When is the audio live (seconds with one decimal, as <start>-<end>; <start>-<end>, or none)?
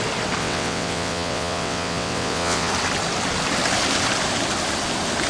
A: 0.0-0.4; 2.7-5.3